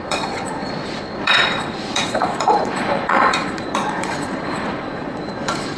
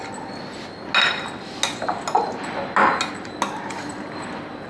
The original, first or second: second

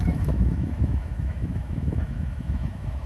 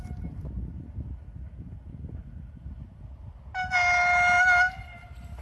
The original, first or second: second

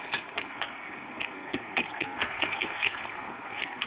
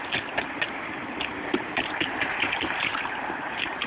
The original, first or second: second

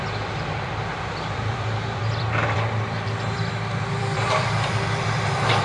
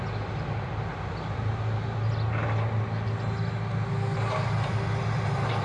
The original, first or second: second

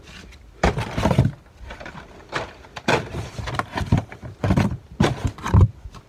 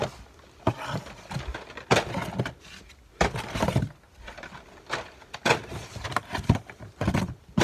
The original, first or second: second